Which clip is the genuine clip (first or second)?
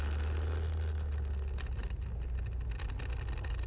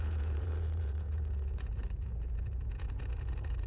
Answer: first